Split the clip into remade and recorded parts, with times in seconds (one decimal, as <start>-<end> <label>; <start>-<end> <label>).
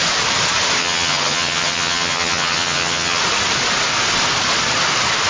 0.0-0.8 recorded; 0.8-3.2 remade; 3.2-5.3 recorded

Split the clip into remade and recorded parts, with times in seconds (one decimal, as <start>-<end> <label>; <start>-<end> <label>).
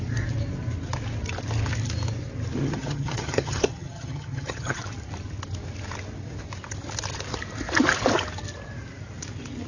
0.0-2.6 recorded; 2.6-4.8 remade; 4.8-9.7 recorded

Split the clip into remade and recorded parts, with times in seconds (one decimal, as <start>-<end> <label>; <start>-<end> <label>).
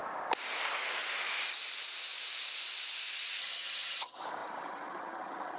0.0-3.4 recorded; 3.4-5.6 remade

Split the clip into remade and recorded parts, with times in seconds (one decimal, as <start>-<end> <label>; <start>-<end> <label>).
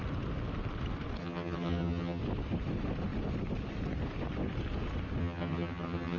0.0-1.2 recorded; 1.2-2.2 remade; 2.2-5.2 recorded; 5.2-6.2 remade